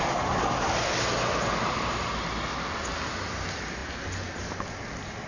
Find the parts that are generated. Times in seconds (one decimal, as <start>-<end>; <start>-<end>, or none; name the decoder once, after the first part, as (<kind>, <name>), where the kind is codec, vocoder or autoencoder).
none